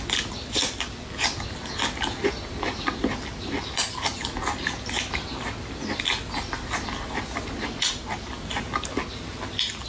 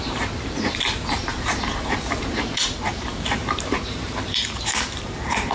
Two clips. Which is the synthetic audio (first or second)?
second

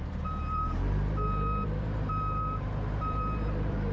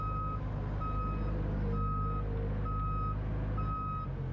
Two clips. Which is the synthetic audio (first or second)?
first